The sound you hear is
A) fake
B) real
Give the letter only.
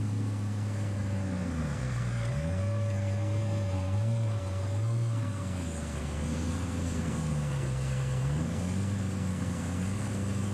A